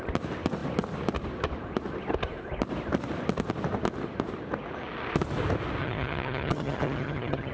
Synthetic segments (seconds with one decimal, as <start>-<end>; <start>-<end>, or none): 5.8-7.5